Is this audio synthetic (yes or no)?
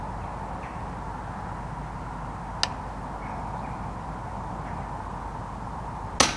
no